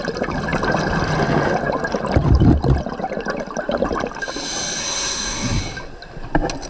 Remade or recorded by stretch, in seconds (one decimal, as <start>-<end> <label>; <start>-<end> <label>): 0.0-4.8 recorded; 4.8-5.6 remade; 5.6-6.7 recorded